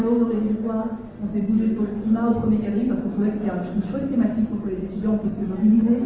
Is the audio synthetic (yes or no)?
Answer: no